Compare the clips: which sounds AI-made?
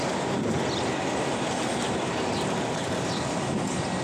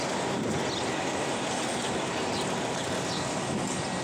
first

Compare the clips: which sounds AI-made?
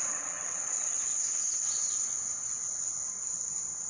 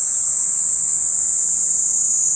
first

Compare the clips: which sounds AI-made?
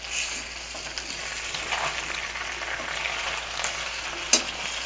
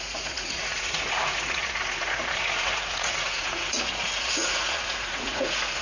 second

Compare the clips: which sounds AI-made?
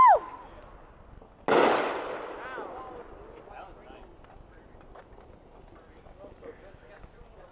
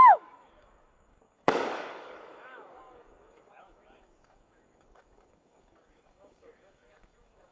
second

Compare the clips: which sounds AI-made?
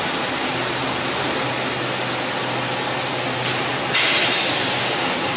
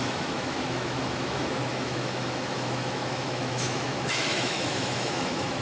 second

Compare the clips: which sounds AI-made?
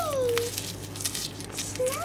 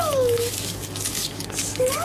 second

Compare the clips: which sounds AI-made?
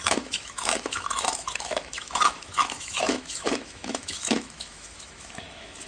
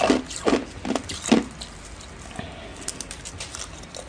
first